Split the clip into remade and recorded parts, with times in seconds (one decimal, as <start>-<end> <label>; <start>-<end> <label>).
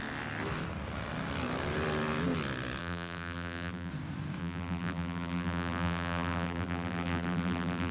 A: 0.0-2.8 recorded; 2.8-3.9 remade; 3.9-4.4 recorded; 4.4-7.9 remade